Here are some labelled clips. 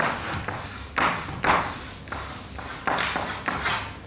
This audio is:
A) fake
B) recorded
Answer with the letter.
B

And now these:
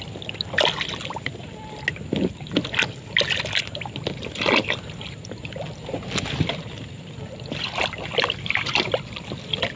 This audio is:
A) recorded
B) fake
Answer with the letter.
A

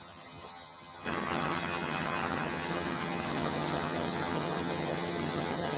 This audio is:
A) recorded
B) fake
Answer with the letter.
B